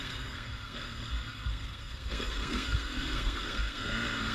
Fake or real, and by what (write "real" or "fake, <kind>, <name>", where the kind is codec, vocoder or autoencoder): fake, codec, SNAC